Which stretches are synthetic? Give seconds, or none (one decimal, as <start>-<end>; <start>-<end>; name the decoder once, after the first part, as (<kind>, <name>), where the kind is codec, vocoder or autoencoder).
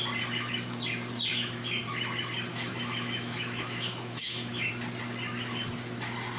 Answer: 1.3-1.8 (autoencoder, DAC-VAE); 2.5-4.7